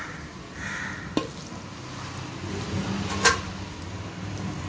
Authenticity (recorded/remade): recorded